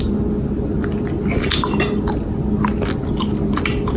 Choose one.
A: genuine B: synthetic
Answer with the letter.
A